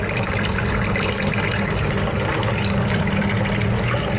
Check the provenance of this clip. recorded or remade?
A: recorded